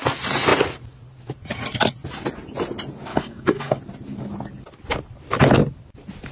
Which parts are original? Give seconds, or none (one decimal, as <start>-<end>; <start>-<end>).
0.0-3.1; 3.8-6.3